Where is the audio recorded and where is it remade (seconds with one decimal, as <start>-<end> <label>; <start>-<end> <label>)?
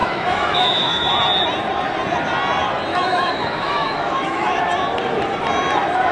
0.0-1.1 remade; 1.1-2.9 recorded; 2.9-4.6 remade; 4.6-6.1 recorded